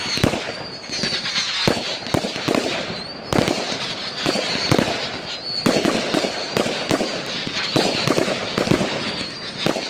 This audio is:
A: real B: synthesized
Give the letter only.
A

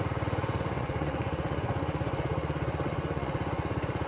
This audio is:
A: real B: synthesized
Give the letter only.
B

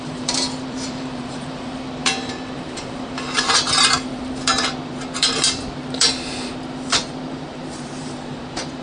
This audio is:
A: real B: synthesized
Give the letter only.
B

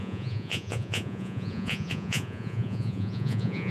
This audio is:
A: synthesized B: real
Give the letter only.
A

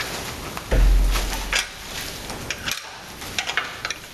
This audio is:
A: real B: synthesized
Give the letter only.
A